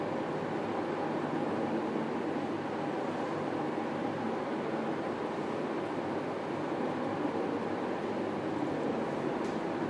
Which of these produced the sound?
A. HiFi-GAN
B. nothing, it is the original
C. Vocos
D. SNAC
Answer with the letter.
B